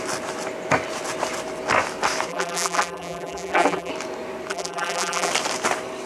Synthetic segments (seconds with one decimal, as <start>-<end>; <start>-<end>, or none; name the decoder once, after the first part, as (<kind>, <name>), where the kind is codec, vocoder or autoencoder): 2.3-3.9 (vocoder, BigVGAN v2); 4.5-5.3